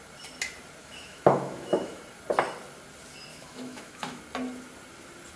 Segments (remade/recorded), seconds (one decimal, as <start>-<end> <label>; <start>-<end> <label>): 0.0-0.8 recorded; 0.8-2.0 remade; 2.0-3.3 recorded; 3.3-4.2 remade; 4.2-5.4 recorded